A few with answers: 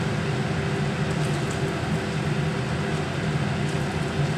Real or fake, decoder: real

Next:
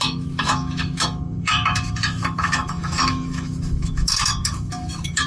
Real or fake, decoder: fake, autoencoder, DAC-VAE